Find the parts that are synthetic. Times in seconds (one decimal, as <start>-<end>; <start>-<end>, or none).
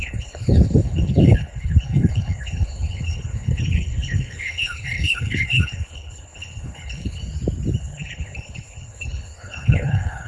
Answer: 0.0-7.2; 7.8-10.3